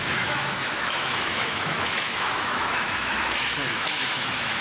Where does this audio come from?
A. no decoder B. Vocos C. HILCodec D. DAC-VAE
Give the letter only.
D